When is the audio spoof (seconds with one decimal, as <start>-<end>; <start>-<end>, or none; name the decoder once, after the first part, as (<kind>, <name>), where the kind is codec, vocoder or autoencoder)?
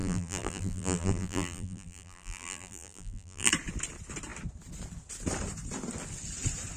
0.0-3.5 (vocoder, BigVGAN v2)